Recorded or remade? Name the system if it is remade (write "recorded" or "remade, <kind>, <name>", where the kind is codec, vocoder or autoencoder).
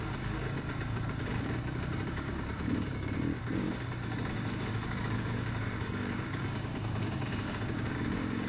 remade, codec, DAC